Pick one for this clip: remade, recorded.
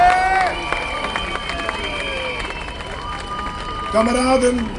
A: recorded